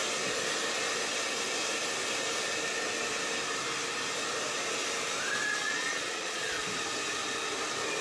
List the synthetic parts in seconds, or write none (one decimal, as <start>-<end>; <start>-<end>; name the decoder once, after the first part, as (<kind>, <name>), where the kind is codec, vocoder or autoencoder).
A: 5.6-6.5 (vocoder, Vocos)